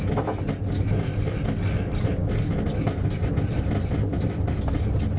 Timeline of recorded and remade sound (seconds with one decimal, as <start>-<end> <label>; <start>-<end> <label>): 0.0-5.2 recorded